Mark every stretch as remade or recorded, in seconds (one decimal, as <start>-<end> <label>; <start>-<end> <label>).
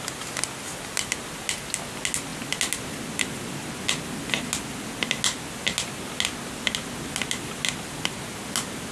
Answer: 0.0-8.9 recorded